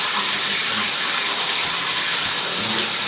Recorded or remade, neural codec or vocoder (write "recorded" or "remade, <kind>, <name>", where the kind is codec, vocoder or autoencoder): recorded